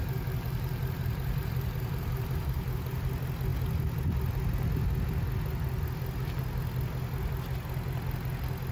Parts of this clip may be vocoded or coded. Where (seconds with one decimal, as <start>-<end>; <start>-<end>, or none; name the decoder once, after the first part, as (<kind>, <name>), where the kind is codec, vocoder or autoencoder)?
0.0-3.1 (vocoder, BigVGAN v2)